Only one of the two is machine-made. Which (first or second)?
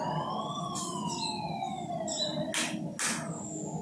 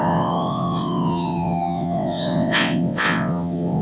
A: second